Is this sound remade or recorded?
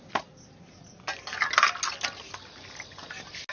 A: recorded